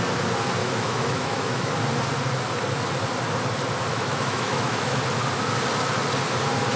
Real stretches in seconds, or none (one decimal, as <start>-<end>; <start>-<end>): 0.0-0.6; 1.7-3.9; 5.0-6.8